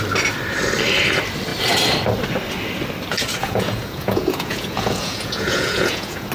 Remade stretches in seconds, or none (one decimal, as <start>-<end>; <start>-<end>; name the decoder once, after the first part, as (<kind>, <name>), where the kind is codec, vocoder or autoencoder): 3.4-6.3 (vocoder, Vocos)